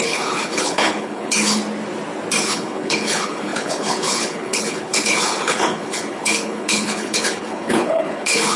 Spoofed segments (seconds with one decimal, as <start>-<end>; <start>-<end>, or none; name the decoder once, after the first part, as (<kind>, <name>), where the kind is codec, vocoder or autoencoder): 0.0-1.6 (codec, HILCodec); 2.4-8.6